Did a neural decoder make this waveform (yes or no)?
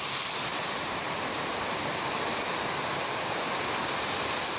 no